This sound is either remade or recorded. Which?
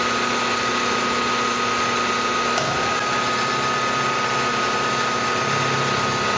recorded